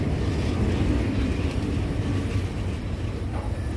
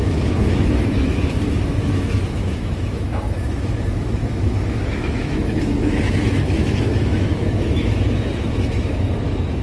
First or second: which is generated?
second